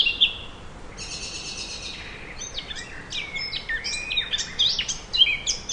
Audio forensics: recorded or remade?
recorded